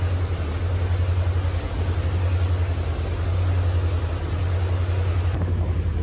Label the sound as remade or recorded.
recorded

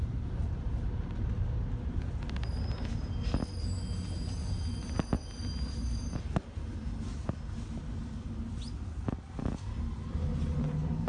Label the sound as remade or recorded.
recorded